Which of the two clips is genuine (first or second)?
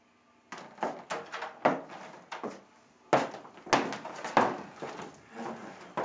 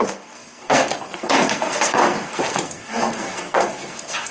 first